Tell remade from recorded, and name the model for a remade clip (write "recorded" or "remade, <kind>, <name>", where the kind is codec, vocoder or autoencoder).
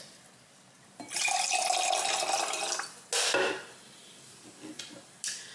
recorded